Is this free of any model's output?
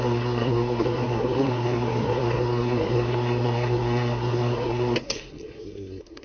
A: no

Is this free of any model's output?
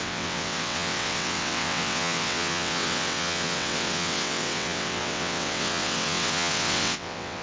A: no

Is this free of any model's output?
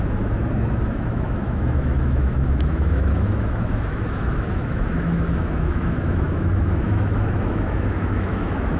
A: no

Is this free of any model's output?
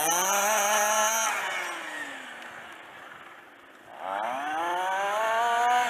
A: yes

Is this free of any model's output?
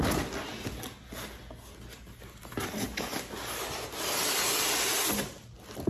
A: yes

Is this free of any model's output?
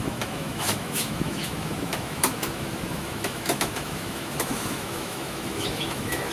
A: no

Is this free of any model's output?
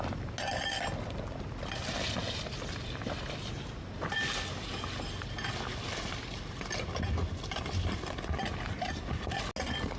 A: yes